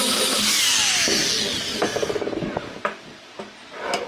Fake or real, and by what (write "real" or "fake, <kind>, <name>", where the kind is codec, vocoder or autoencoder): real